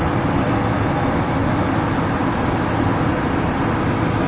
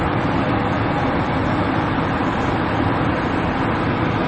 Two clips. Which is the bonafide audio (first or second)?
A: first